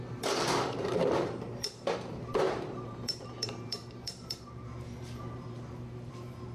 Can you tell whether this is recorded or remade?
remade